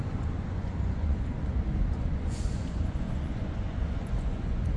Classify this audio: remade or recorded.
remade